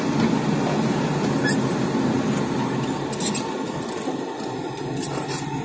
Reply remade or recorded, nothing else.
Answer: recorded